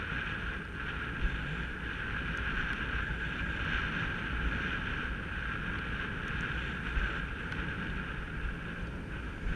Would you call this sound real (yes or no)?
yes